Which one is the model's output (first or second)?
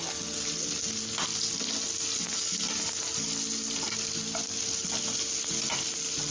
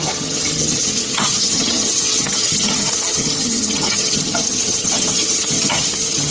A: second